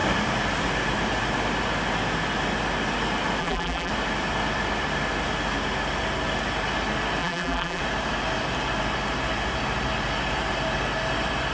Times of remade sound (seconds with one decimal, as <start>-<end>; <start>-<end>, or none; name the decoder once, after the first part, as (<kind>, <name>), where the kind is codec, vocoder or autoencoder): 3.4-3.9 (vocoder, BigVGAN v2); 7.2-7.8